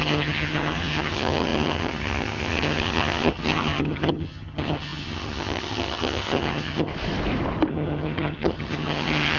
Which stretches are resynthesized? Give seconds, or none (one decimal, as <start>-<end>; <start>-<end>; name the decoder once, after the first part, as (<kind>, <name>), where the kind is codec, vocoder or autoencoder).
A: 0.0-6.9 (vocoder, HiFi-GAN); 7.7-9.4